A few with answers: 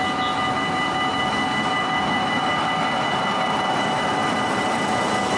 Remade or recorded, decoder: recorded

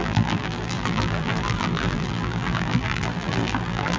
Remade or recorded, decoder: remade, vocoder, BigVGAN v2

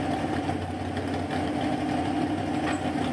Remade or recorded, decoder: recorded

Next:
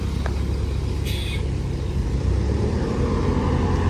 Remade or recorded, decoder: recorded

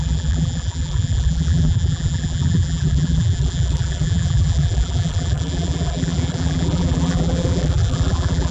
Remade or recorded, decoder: remade, vocoder, BigVGAN v2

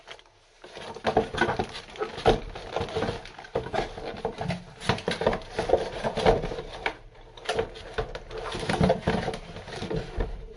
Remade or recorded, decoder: recorded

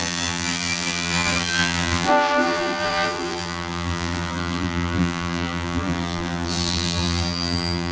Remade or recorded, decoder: remade, vocoder, BigVGAN v2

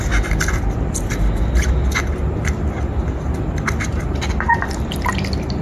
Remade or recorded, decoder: recorded